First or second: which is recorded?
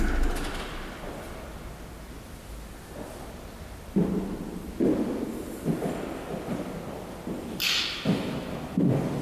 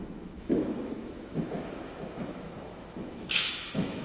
first